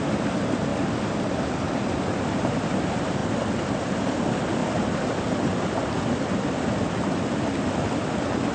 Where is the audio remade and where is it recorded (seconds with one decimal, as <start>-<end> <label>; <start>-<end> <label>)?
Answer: 0.0-8.5 recorded